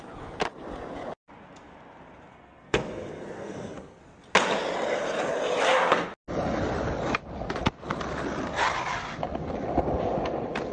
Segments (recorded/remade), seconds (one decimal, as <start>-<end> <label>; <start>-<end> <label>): 0.0-2.3 recorded; 2.3-4.0 remade; 4.0-10.7 recorded